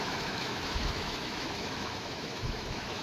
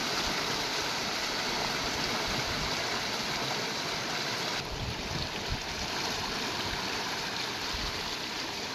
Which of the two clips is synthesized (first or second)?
first